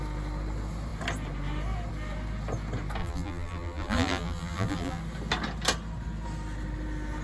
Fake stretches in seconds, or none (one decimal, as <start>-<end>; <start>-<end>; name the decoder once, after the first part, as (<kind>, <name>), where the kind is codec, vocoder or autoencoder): 3.0-5.0 (vocoder, BigVGAN v2)